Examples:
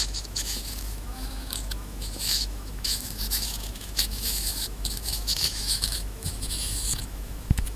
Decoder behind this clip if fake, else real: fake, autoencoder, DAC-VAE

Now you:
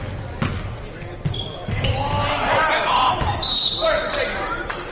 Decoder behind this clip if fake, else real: real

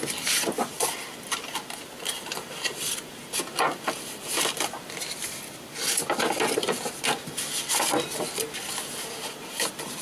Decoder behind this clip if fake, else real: real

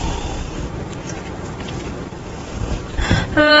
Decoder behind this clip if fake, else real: fake, vocoder, BigVGAN v2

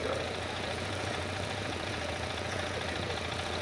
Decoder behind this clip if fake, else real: fake, vocoder, Vocos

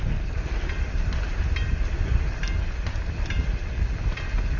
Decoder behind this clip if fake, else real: real